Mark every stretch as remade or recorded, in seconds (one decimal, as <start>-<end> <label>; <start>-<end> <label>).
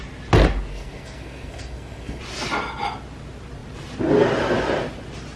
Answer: 0.0-0.7 recorded; 0.7-2.2 remade; 2.2-5.4 recorded